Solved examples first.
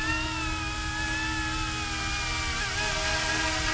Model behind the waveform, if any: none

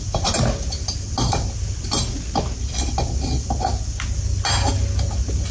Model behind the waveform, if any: none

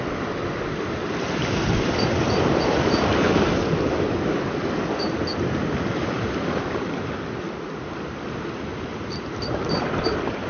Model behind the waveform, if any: none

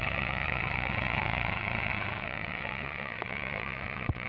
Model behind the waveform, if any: vocoder, WaveNeXt